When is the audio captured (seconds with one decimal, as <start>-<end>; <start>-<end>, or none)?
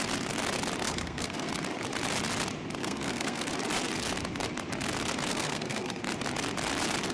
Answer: 0.0-0.8; 1.5-2.8; 3.5-5.3; 6.0-7.1